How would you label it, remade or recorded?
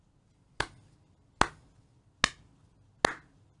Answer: recorded